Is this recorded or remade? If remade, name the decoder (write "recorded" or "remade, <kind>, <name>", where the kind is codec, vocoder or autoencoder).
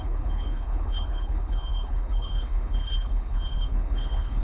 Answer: remade, codec, HILCodec